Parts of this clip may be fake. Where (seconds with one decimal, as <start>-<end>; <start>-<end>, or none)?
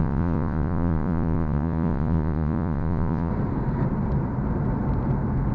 0.0-3.3